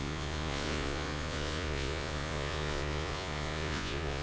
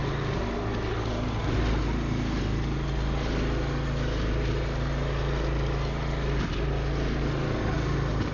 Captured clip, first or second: second